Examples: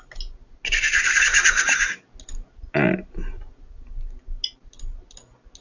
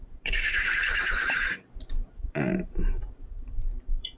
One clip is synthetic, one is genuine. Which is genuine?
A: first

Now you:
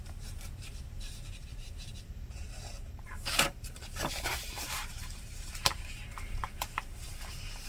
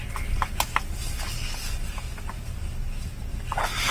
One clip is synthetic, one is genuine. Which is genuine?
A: second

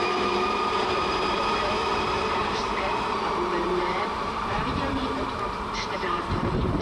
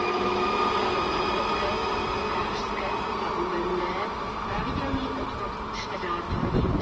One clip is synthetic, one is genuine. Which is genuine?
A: second